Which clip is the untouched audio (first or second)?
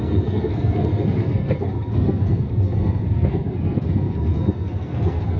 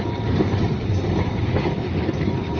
second